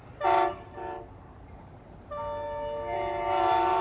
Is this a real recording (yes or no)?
yes